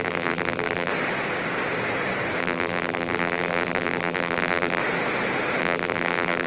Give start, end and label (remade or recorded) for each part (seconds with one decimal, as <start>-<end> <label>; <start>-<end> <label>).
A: 0.0-0.9 remade; 0.9-2.4 recorded; 2.4-4.8 remade; 4.8-5.6 recorded; 5.6-6.5 remade